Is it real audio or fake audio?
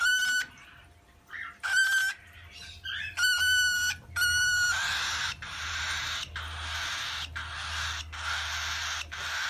real